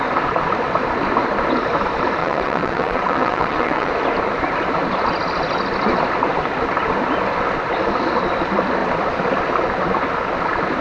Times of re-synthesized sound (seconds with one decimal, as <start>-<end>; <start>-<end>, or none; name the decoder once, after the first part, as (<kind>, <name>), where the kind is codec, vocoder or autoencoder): 2.2-3.9 (vocoder, WaveNeXt)